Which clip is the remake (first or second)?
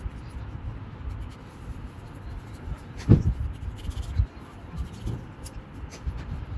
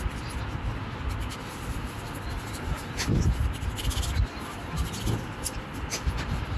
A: first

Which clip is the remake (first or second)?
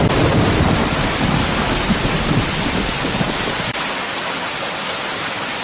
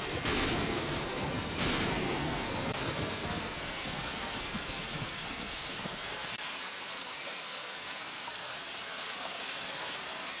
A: second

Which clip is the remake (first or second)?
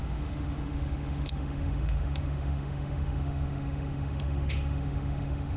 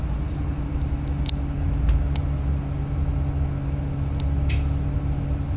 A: first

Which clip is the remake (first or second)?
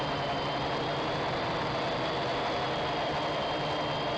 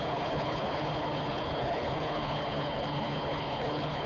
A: second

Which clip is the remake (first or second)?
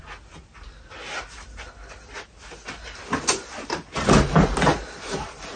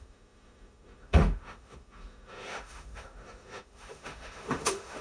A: second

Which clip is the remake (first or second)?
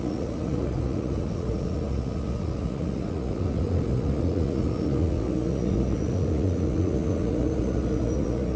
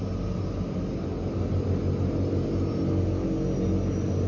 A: first